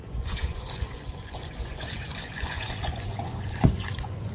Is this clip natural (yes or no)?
no